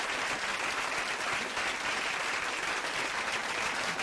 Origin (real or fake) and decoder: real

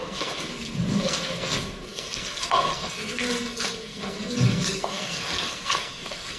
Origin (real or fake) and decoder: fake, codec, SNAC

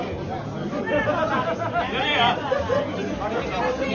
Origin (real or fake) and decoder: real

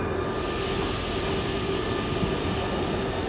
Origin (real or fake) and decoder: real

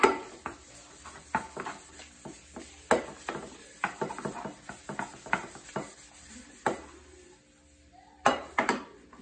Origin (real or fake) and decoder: real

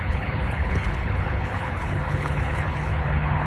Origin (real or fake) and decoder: fake, codec, HILCodec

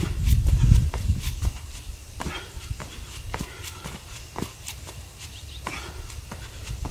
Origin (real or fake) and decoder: real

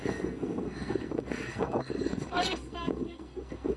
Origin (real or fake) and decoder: fake, codec, SNAC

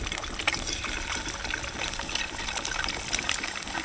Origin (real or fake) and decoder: real